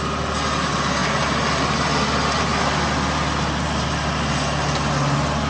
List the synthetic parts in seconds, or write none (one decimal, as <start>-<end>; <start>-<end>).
none